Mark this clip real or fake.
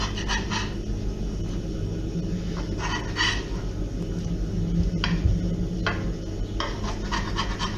real